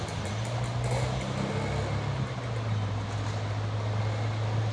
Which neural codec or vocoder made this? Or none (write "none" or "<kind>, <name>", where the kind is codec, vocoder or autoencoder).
none